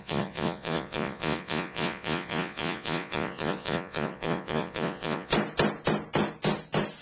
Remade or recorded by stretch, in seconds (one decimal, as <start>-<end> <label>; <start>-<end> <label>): 0.0-5.3 remade; 5.3-7.0 recorded